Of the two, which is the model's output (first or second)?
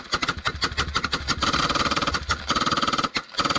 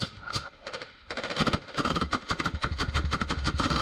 second